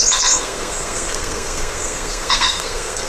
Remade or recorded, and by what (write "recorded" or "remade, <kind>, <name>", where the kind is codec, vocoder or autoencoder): remade, codec, SNAC